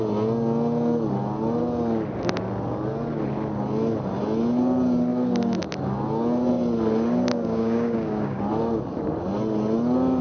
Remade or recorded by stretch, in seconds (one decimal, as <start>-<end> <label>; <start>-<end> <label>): 0.0-7.3 recorded; 7.3-8.4 remade; 8.4-10.2 recorded